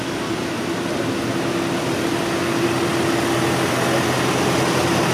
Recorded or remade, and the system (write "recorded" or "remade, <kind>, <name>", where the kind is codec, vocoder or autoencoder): recorded